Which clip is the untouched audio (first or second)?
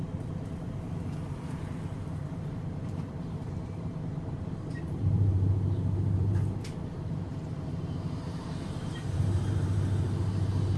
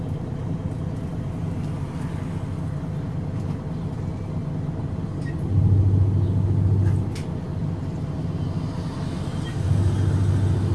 second